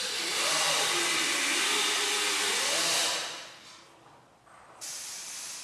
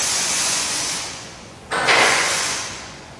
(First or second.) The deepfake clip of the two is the second